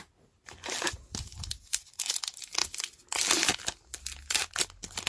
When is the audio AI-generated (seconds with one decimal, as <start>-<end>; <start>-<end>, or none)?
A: none